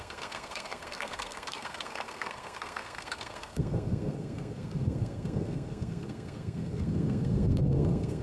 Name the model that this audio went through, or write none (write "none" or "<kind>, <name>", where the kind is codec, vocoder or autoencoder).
codec, SNAC